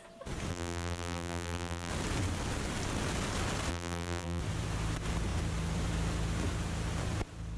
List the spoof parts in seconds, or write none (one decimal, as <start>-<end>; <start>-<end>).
0.5-1.9; 3.7-4.4

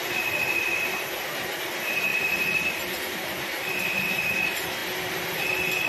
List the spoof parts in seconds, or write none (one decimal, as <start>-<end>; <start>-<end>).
2.1-3.8